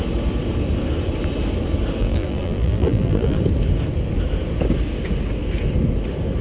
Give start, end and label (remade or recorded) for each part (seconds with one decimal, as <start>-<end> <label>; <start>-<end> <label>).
0.0-2.0 recorded; 2.0-3.4 remade; 3.4-6.4 recorded